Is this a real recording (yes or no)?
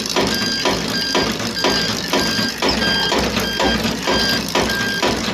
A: yes